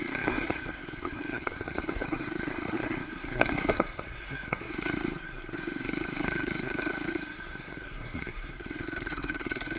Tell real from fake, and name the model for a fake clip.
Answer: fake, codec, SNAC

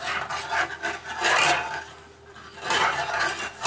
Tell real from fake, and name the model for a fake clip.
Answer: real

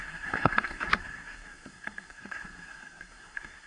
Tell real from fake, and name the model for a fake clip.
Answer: fake, codec, SNAC